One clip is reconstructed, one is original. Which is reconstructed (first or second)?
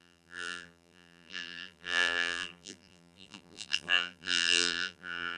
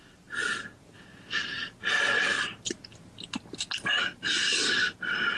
first